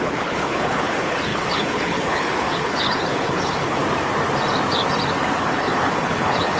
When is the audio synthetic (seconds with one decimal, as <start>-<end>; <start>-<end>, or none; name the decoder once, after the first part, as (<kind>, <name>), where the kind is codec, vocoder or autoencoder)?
0.0-3.8 (codec, HILCodec); 5.4-6.6